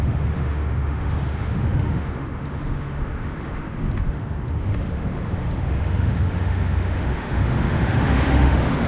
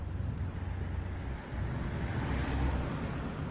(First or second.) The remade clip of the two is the first